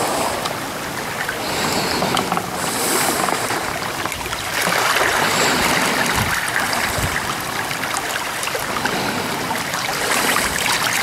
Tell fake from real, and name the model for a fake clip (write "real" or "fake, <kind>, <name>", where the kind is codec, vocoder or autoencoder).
real